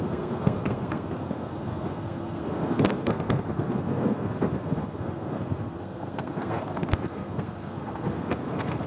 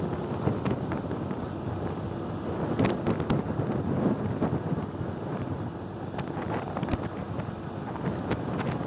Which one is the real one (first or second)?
second